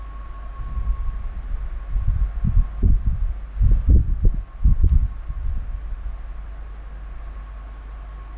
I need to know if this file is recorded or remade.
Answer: recorded